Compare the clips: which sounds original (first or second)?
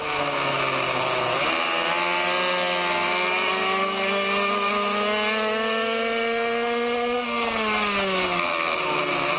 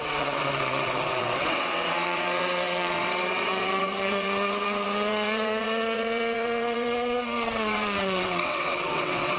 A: first